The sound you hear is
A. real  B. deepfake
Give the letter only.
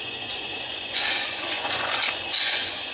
B